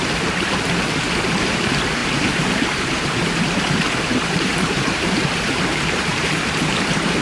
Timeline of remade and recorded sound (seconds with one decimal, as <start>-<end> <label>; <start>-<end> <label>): 0.0-2.0 recorded; 2.0-6.3 remade; 6.3-7.2 recorded